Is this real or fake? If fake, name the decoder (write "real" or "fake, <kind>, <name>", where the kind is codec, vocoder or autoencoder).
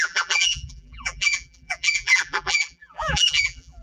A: fake, vocoder, BigVGAN v2